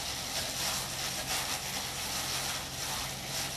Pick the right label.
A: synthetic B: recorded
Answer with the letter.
B